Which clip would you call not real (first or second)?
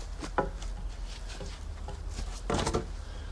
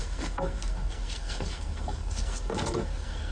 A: second